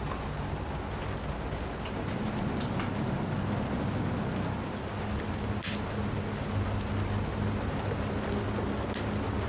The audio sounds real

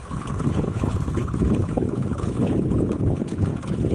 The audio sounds fake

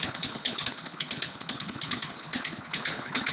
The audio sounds fake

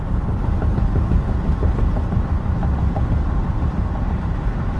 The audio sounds real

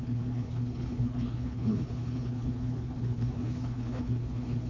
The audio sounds fake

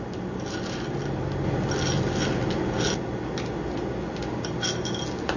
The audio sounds real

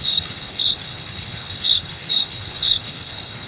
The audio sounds fake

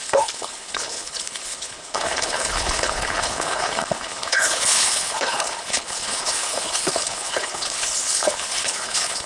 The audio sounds fake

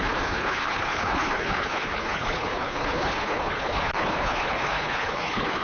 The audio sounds fake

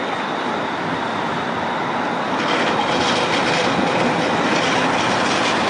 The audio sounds real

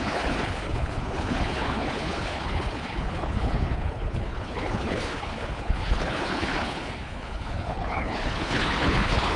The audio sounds fake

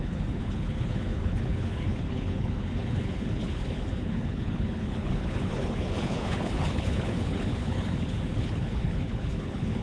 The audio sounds fake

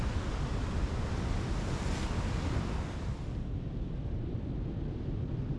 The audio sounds real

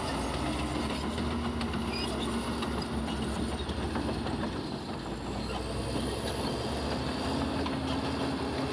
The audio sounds real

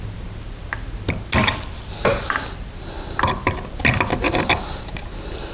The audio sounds real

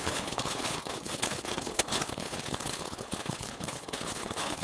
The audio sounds fake